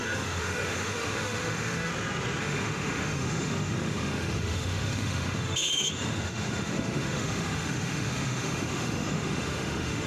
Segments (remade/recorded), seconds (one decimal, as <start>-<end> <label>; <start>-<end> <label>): 0.0-1.9 remade; 1.9-2.4 recorded; 2.4-10.1 remade